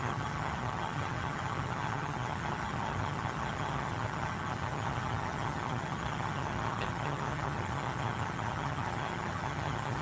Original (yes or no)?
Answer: no